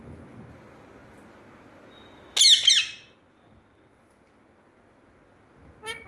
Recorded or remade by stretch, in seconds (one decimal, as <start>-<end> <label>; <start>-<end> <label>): 0.0-6.1 recorded